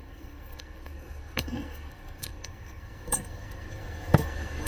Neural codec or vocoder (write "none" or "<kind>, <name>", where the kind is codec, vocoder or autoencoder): codec, SNAC